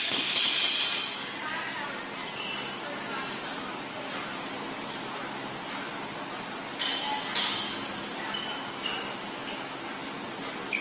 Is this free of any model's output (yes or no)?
yes